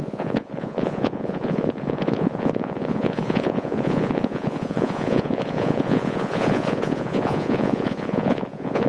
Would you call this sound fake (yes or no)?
yes